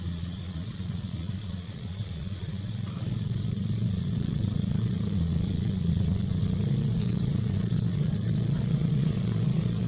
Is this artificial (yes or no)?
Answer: yes